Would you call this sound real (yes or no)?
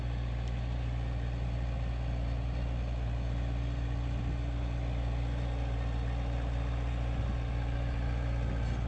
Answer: yes